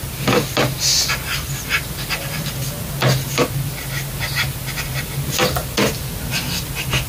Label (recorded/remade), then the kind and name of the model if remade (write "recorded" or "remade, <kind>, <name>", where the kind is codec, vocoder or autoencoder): recorded